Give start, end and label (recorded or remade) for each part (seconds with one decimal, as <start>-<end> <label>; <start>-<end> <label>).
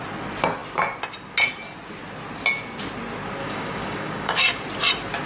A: 0.0-3.4 recorded; 3.4-4.4 remade; 4.4-5.3 recorded